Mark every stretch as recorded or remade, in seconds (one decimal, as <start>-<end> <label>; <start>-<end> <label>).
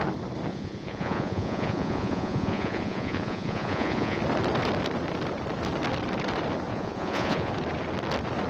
0.0-0.5 recorded; 0.5-4.2 remade; 4.2-6.7 recorded; 6.7-7.5 remade; 7.5-8.5 recorded